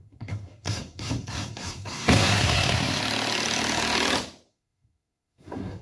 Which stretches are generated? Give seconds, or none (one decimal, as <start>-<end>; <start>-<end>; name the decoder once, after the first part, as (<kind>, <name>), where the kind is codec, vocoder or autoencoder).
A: 0.0-3.0 (codec, SNAC); 4.5-5.8